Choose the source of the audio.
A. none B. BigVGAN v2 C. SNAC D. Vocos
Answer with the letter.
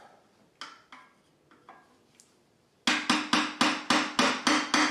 A